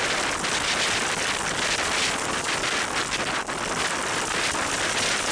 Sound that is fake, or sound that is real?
real